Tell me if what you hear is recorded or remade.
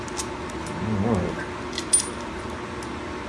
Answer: recorded